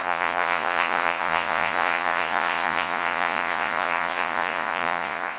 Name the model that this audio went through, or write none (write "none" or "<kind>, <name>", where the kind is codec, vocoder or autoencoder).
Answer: vocoder, Vocos